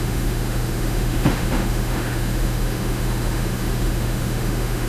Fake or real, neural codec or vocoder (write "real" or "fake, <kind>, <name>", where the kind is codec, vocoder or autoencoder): fake, autoencoder, DAC-VAE